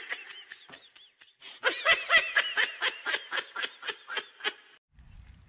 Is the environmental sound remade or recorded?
recorded